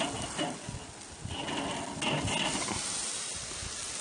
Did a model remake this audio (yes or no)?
no